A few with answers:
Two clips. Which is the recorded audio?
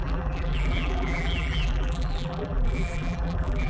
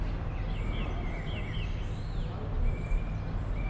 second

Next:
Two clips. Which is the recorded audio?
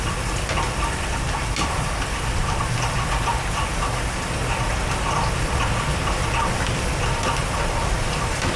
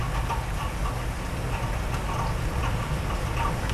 second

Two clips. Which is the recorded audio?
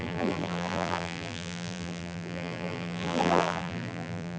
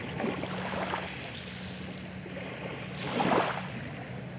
second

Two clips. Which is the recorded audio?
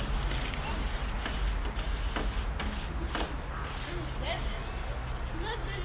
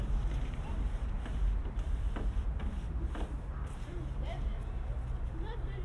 first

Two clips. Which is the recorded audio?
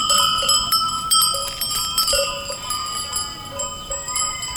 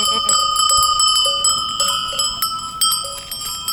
second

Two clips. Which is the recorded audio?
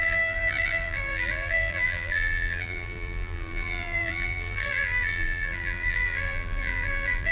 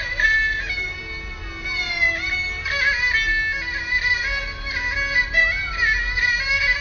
second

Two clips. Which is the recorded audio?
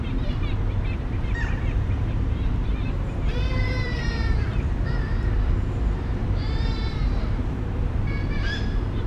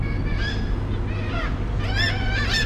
second